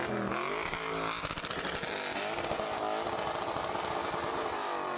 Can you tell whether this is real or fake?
real